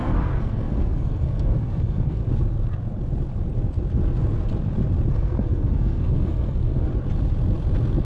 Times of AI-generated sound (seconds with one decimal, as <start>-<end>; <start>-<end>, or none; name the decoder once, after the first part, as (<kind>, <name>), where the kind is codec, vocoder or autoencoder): 0.0-2.2 (codec, SNAC); 5.1-6.9